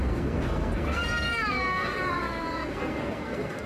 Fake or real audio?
fake